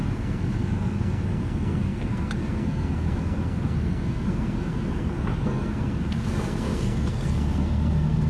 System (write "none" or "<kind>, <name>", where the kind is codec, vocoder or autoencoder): codec, SNAC